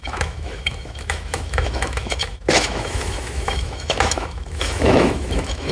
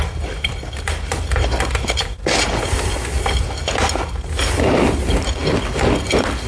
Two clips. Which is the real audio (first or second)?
second